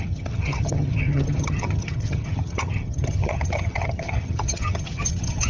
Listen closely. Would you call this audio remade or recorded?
remade